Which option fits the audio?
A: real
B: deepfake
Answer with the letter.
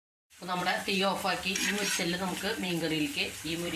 B